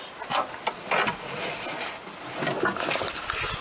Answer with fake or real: real